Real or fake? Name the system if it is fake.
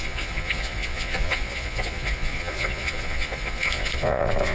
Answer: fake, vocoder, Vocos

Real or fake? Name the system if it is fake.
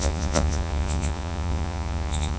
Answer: fake, vocoder, Vocos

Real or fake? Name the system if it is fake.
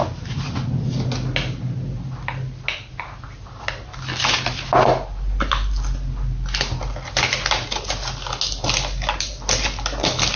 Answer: real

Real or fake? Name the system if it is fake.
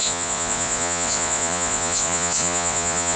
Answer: fake, vocoder, Vocos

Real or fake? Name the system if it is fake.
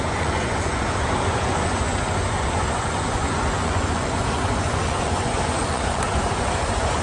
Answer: fake, vocoder, Vocos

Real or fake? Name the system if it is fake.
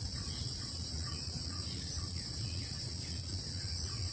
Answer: fake, vocoder, Vocos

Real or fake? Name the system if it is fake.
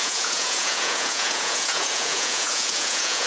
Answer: fake, vocoder, Vocos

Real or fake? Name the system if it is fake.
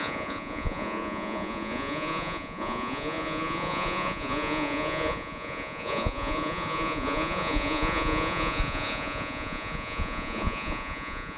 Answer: fake, vocoder, Vocos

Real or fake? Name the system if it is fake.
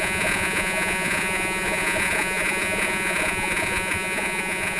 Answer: fake, vocoder, Vocos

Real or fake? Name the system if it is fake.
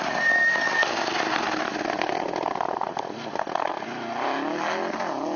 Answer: real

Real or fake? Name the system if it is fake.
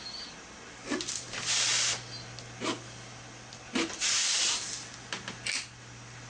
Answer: real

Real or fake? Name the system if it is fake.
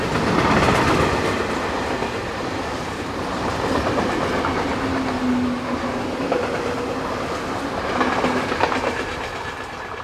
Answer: real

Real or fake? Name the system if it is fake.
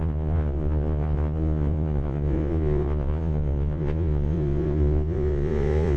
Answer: fake, vocoder, Vocos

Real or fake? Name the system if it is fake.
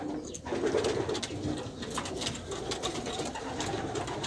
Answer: real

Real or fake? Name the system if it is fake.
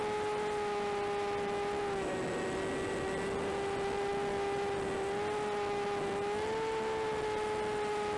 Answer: real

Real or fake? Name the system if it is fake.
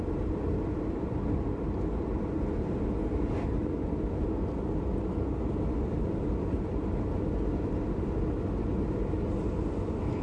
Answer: real